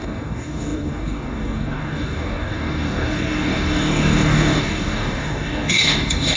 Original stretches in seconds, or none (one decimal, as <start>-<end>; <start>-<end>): none